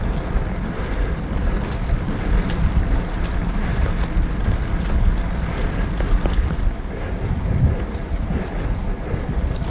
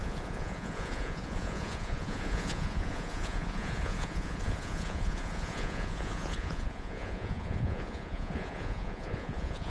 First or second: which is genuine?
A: first